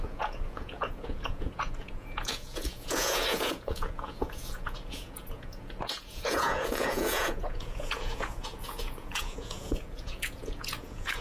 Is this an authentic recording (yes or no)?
no